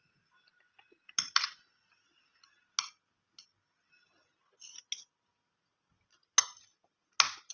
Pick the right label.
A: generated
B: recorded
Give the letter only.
B